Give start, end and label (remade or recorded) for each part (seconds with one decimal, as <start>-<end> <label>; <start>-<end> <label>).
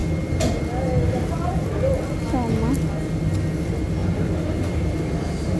0.0-5.6 recorded